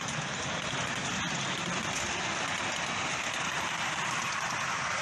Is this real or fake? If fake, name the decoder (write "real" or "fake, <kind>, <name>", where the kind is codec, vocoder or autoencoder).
real